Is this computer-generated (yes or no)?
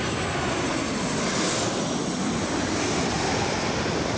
no